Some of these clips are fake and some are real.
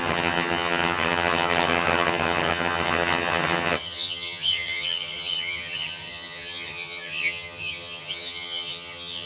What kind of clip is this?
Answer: fake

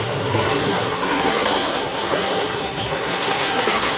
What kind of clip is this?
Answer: fake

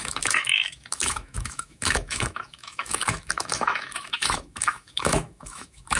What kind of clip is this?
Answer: fake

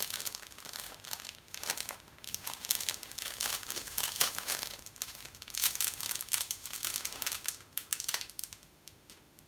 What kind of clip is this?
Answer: fake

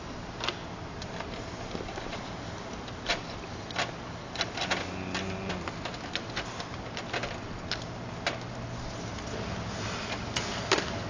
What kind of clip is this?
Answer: real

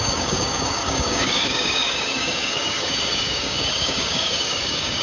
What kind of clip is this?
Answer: fake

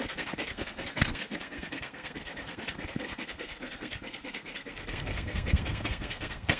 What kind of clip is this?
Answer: fake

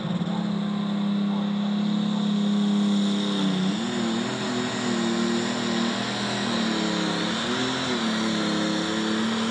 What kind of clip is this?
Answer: real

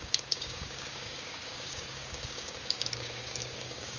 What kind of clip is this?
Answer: fake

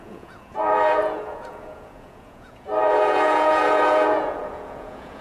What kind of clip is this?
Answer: fake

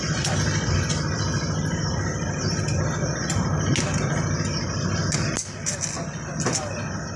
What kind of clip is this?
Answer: real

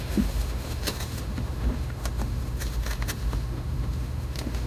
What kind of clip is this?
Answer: fake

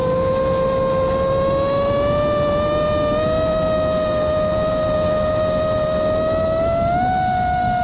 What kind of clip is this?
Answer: real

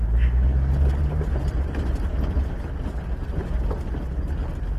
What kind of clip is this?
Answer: real